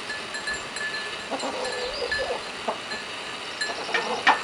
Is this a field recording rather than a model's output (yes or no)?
yes